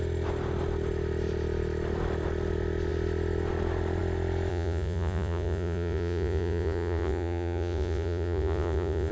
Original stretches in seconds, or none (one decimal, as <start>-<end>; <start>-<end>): 0.0-4.5